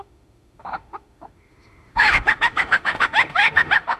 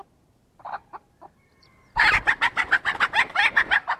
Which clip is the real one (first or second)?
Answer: second